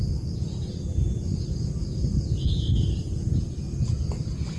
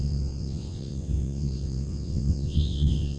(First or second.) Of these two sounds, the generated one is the second